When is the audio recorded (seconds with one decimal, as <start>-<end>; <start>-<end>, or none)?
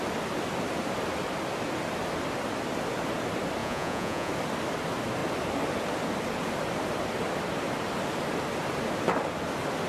0.0-3.6; 4.3-9.9